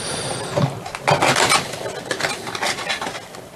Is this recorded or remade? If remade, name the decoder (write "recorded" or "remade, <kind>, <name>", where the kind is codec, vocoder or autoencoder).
recorded